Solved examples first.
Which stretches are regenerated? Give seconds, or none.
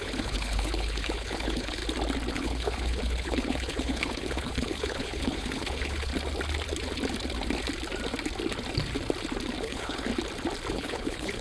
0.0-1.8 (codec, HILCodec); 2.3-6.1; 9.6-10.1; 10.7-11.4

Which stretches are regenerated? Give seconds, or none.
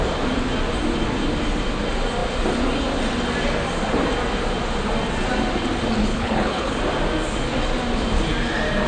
6.0-6.8 (codec, HILCodec)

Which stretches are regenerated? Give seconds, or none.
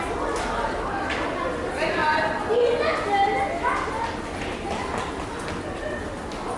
none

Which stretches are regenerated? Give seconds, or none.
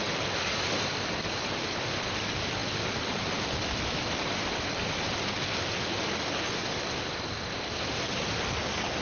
none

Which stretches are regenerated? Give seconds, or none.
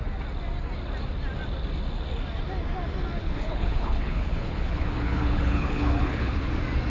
3.2-6.5 (codec, HILCodec)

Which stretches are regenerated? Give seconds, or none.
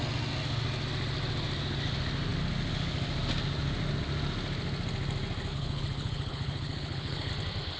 5.5-7.3 (codec, HILCodec)